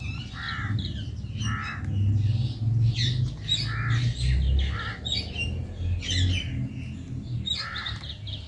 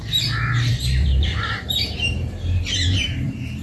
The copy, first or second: second